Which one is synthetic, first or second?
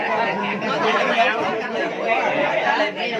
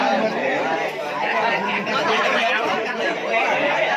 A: second